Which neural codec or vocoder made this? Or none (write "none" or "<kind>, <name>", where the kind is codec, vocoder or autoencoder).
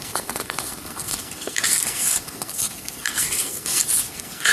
codec, SNAC